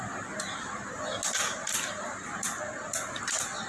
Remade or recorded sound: recorded